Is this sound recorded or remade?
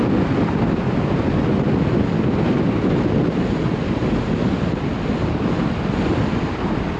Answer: recorded